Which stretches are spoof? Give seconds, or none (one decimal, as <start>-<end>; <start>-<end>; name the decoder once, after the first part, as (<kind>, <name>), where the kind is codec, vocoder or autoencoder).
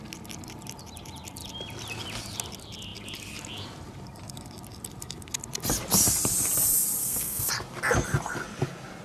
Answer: 7.0-7.5 (codec, SNAC)